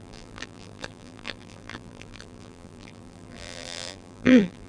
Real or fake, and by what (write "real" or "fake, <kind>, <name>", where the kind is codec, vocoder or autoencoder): fake, vocoder, BigVGAN v2